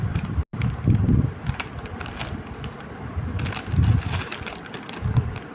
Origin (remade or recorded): recorded